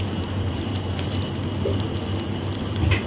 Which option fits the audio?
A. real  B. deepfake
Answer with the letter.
A